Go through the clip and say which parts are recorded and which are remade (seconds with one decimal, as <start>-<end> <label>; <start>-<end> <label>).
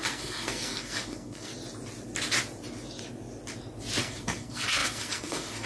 0.0-1.5 remade; 1.5-4.0 recorded; 4.0-5.7 remade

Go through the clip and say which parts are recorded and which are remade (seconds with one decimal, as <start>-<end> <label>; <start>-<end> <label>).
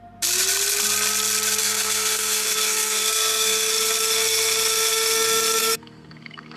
0.0-1.6 recorded; 1.6-3.7 remade; 3.7-5.6 recorded; 5.6-6.6 remade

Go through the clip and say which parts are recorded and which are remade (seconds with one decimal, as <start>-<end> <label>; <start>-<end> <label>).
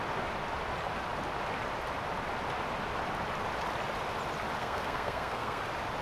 0.0-4.6 recorded; 4.6-5.6 remade; 5.6-6.0 recorded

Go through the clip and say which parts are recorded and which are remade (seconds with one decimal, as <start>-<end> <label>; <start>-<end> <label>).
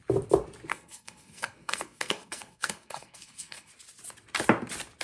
0.0-0.7 recorded; 0.7-3.7 remade; 3.7-5.0 recorded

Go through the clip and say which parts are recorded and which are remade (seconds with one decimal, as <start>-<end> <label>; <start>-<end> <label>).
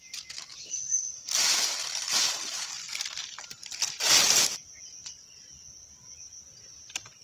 0.0-7.2 recorded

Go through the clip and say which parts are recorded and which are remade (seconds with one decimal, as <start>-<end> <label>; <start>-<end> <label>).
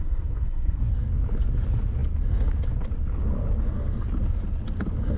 0.0-0.9 remade; 0.9-5.2 recorded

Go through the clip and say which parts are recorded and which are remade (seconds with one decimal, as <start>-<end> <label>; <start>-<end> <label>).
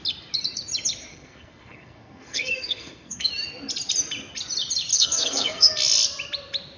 0.0-1.1 recorded; 1.1-3.3 remade; 3.3-4.9 recorded; 4.9-5.7 remade; 5.7-6.8 recorded